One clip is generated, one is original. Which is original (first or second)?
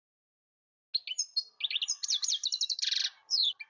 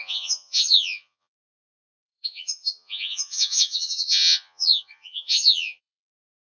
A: first